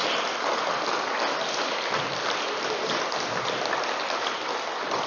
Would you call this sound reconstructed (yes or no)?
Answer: no